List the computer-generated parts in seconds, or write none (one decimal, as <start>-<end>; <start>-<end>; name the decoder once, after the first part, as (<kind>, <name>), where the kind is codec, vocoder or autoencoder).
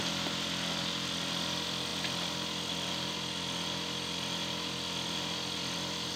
none